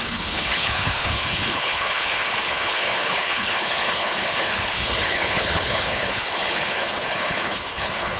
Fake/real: fake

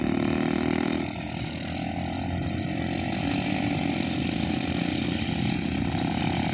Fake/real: real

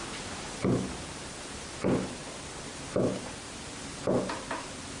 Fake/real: real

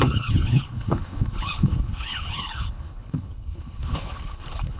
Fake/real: fake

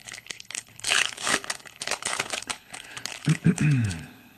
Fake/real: fake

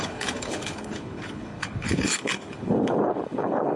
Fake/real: fake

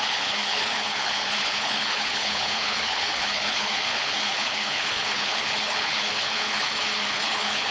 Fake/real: fake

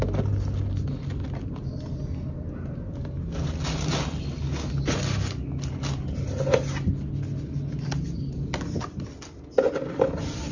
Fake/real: real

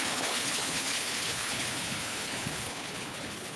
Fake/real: fake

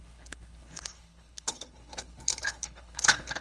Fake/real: fake